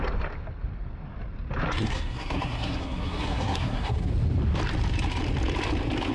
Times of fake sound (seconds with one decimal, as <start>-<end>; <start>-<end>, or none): 1.7-4.1